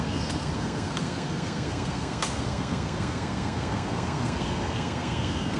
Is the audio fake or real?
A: fake